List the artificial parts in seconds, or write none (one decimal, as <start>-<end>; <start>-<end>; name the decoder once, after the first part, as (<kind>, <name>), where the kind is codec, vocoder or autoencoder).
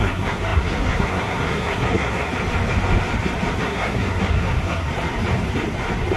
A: 0.0-2.3 (codec, SNAC); 3.6-4.9